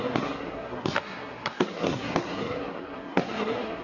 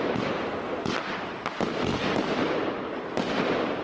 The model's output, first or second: first